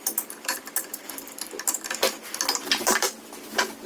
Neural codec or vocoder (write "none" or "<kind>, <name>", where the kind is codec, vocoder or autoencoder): none